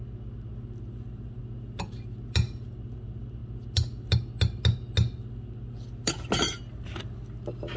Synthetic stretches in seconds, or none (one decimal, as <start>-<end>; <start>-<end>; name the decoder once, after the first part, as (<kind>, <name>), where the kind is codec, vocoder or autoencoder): none